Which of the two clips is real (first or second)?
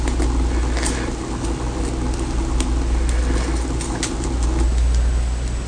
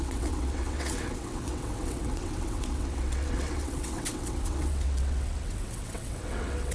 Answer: first